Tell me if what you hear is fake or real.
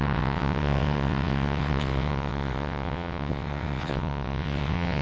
fake